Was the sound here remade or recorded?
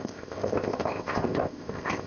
remade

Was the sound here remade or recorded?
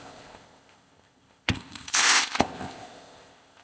remade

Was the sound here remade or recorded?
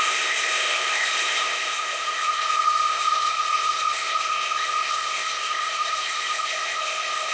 remade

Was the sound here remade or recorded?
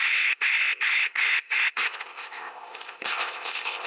remade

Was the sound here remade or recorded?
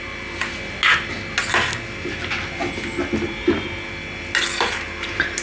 recorded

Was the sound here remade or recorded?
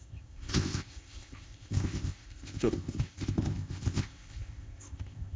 remade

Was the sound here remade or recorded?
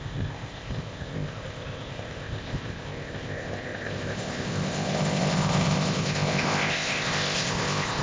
remade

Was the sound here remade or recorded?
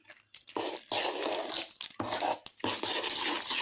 recorded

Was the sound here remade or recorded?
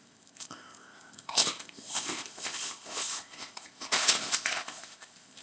remade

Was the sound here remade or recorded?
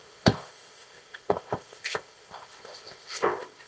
remade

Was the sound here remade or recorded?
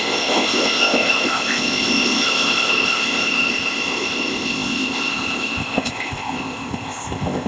remade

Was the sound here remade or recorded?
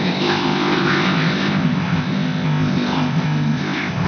remade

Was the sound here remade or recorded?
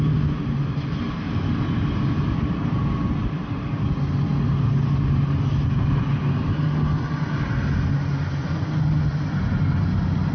recorded